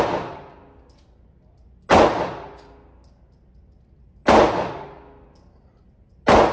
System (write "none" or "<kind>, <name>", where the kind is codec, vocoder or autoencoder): none